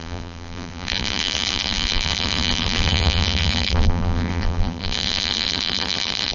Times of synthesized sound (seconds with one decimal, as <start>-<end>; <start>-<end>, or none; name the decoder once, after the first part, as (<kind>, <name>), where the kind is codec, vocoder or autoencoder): 0.0-6.3 (vocoder, BigVGAN v2)